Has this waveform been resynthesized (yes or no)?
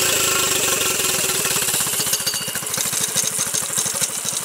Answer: no